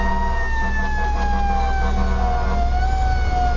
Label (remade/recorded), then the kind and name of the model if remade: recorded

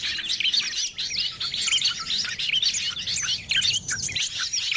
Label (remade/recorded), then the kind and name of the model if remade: recorded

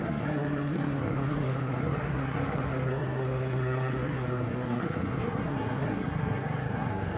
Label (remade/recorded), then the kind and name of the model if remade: remade, codec, SNAC